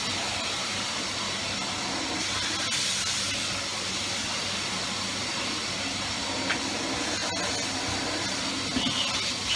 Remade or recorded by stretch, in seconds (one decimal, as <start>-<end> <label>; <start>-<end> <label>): 0.0-9.6 recorded